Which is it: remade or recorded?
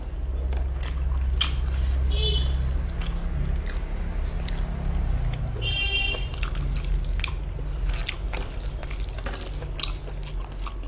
recorded